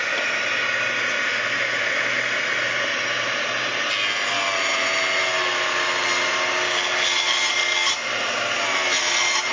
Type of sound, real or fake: real